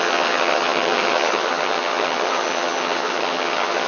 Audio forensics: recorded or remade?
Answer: remade